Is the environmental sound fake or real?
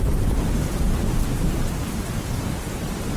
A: fake